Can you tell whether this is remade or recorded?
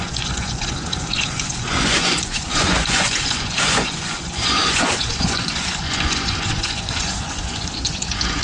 remade